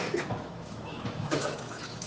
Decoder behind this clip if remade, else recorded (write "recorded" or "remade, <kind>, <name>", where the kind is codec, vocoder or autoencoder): remade, autoencoder, DAC-VAE